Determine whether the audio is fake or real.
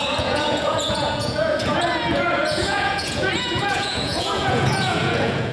fake